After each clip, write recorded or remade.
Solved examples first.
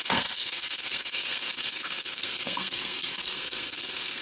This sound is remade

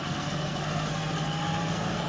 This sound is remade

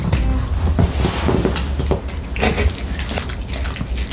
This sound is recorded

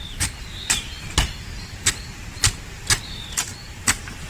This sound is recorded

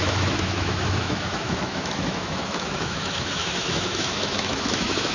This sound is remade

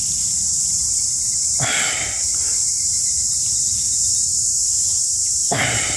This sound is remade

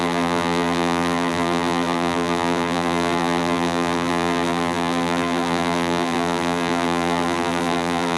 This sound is remade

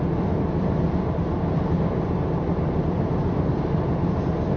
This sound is recorded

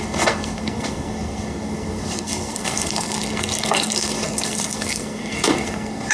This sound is remade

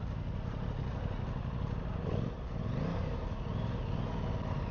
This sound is recorded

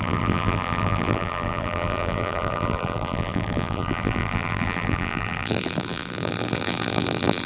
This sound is remade